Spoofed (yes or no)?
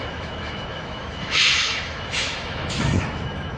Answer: yes